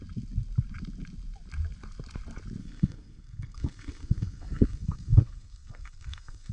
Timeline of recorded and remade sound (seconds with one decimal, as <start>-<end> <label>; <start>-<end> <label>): 0.0-2.6 recorded; 2.6-6.5 remade